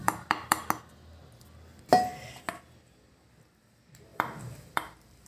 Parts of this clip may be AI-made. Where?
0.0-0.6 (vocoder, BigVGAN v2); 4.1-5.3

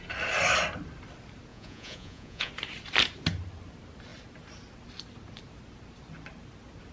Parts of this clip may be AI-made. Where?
1.5-2.5 (vocoder, Vocos)

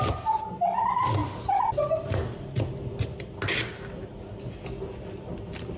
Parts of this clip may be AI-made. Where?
none

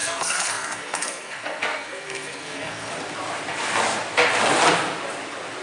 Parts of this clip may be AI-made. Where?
0.0-2.9 (codec, SNAC)